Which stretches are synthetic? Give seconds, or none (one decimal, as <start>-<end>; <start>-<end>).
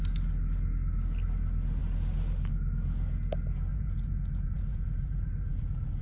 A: 3.7-6.0